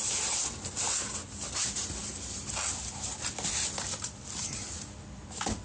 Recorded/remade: recorded